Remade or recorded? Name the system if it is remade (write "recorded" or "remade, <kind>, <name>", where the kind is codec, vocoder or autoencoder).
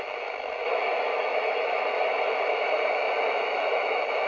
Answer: remade, autoencoder, DAC-VAE